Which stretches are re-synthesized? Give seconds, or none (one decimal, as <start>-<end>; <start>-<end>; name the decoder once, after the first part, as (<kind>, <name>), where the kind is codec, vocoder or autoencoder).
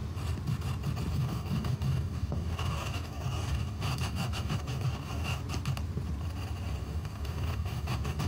1.1-5.4 (codec, DAC); 6.8-8.3